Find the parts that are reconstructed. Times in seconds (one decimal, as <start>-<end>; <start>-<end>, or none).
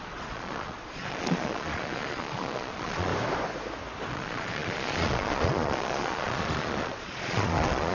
0.0-3.1; 4.1-7.9